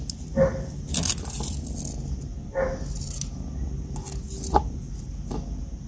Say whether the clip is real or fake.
real